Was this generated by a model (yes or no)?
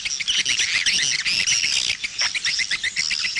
no